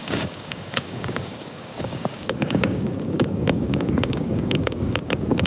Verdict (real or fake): fake